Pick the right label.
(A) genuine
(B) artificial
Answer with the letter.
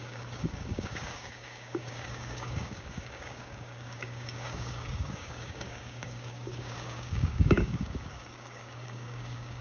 B